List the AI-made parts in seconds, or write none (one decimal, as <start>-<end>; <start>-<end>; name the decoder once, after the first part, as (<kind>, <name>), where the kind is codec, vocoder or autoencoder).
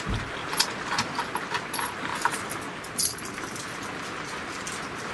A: none